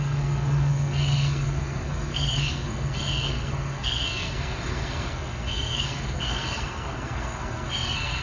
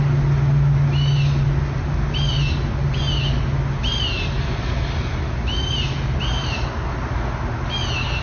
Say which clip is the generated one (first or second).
first